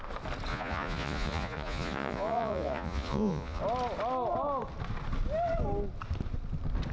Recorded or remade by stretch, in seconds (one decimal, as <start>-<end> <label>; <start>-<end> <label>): 0.0-0.5 recorded; 0.5-3.6 remade; 3.6-6.9 recorded